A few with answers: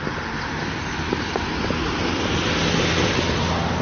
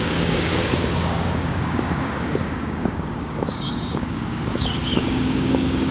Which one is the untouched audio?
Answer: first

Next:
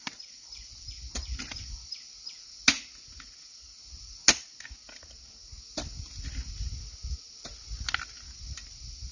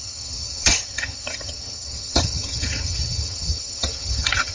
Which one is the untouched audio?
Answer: first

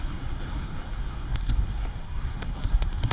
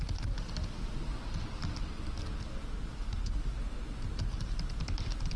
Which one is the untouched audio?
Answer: second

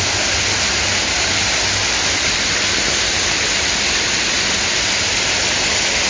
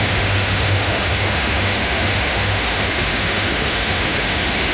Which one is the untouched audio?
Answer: first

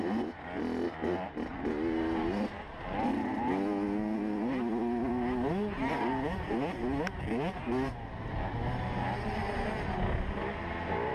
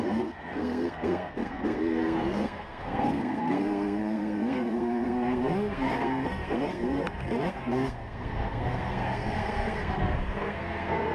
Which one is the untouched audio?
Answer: first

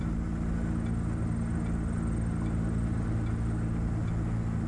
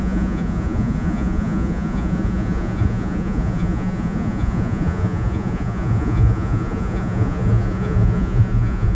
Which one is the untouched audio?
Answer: first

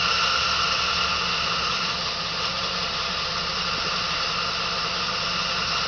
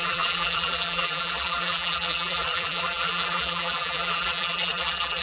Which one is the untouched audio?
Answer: first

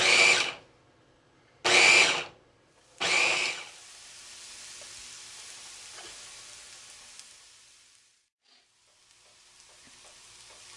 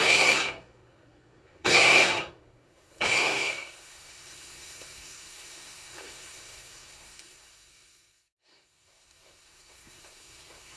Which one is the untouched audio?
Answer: first